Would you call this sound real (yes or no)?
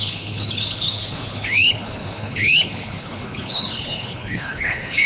no